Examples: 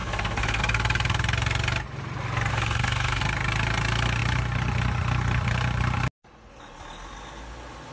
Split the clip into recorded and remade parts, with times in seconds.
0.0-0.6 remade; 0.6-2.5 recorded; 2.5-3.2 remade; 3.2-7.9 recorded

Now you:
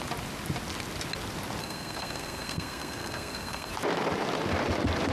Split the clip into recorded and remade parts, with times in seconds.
0.0-1.6 recorded; 1.6-3.7 remade; 3.7-5.1 recorded

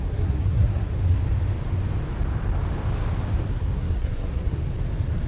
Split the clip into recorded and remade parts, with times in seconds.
0.0-0.9 remade; 0.9-3.5 recorded; 3.5-4.6 remade; 4.6-5.3 recorded

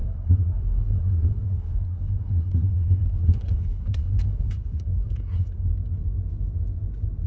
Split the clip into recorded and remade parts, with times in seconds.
0.0-5.7 remade; 5.7-7.3 recorded